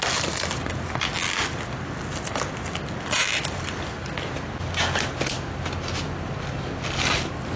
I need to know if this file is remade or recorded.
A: recorded